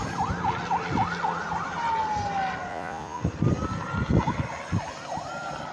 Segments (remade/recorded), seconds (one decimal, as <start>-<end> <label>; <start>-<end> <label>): 0.0-2.7 recorded; 2.7-3.2 remade; 3.2-5.7 recorded